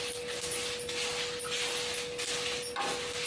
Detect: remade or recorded recorded